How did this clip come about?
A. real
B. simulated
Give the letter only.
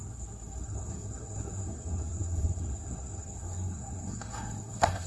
B